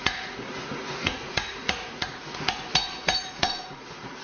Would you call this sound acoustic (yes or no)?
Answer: no